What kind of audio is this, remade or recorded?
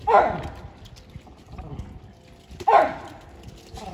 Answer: recorded